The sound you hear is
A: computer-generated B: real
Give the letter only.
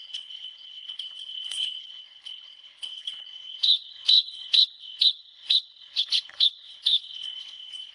A